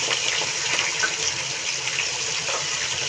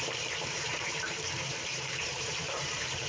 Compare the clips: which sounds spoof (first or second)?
second